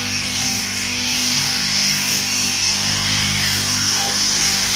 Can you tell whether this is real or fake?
fake